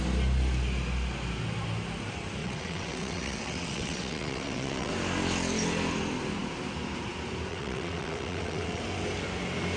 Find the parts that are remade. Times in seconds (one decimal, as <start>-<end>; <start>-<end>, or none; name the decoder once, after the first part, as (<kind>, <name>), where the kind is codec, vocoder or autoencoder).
2.4-4.9 (vocoder, WaveNeXt); 7.5-8.8